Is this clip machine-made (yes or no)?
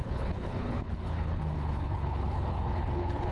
yes